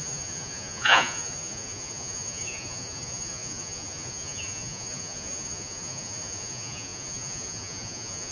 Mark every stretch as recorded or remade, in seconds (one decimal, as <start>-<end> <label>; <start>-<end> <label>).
0.0-8.3 remade